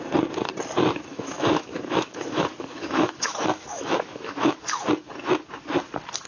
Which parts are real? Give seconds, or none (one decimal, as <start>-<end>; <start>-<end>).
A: 0.0-1.1; 4.9-6.3